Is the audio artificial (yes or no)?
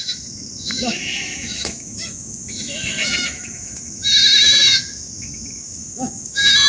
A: yes